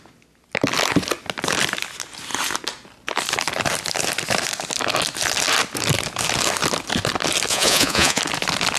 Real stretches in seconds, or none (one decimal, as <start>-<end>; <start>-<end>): 0.0-7.5; 8.2-8.8